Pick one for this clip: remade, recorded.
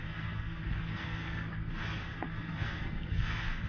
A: remade